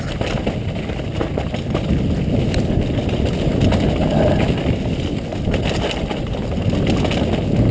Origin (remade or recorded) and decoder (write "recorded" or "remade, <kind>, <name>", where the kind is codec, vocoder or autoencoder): recorded